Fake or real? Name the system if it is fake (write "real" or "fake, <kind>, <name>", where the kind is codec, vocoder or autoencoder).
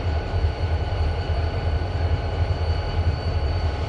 fake, vocoder, BigVGAN v2